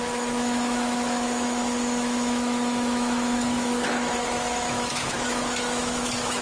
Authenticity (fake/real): fake